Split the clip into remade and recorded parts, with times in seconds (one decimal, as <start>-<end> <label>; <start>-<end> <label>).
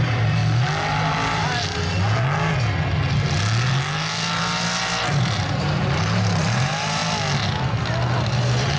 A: 0.0-0.4 remade; 0.4-5.5 recorded; 5.5-7.0 remade; 7.0-8.2 recorded; 8.2-8.8 remade